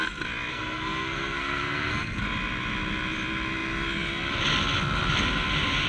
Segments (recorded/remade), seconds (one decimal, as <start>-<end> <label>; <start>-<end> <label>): 0.0-0.5 recorded; 0.5-2.2 remade; 2.2-5.9 recorded